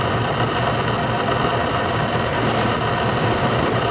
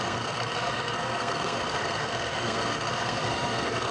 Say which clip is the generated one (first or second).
second